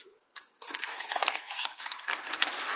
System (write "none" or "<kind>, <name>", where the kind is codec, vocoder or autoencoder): codec, SNAC